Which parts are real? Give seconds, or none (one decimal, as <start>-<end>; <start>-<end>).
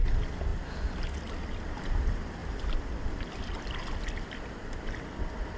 0.0-5.6